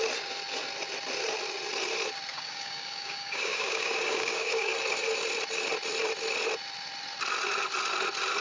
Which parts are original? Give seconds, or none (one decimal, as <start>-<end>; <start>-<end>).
0.0-2.3; 4.7-8.4